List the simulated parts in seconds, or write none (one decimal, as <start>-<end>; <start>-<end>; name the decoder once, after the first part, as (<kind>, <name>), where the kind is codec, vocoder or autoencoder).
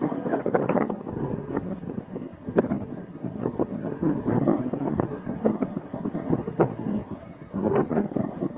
0.0-8.6 (codec, SNAC)